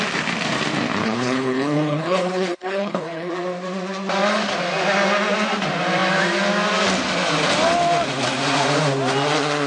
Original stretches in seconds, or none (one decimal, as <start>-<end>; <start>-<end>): 0.0-1.0; 3.3-9.7